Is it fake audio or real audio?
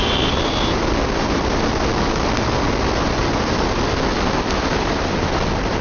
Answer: real